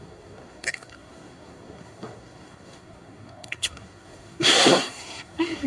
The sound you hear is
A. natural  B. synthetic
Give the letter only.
B